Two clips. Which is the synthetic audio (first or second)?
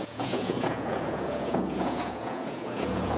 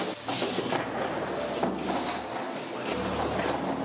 first